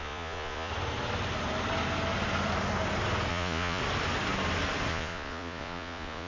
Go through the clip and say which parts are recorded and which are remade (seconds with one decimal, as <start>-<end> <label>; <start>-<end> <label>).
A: 0.0-0.7 remade; 0.7-3.3 recorded; 3.3-3.8 remade; 3.8-4.9 recorded; 4.9-6.3 remade